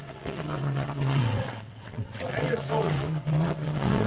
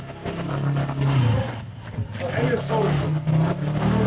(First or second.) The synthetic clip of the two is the first